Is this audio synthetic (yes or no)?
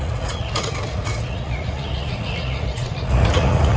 yes